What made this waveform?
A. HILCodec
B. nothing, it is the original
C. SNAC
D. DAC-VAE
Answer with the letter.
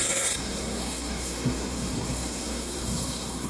C